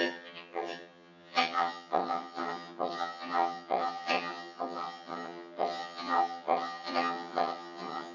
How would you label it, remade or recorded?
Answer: remade